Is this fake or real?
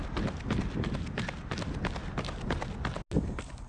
real